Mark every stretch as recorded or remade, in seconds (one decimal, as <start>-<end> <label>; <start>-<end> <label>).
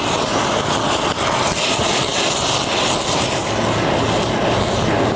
0.0-5.2 recorded